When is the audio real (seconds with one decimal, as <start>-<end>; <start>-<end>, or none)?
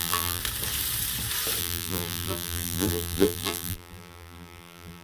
0.4-1.6